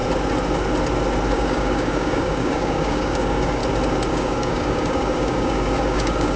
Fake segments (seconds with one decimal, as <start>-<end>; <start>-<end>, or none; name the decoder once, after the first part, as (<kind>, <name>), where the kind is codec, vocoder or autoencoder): 1.3-3.6 (codec, DAC); 4.1-6.4